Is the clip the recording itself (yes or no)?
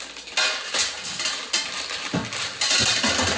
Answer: yes